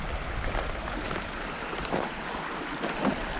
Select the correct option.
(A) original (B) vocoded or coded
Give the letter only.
A